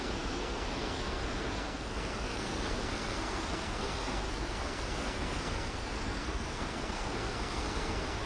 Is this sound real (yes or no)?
no